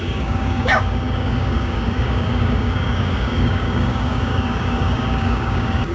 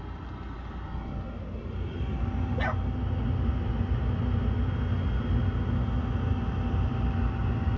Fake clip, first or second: first